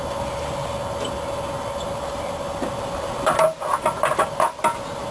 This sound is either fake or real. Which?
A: real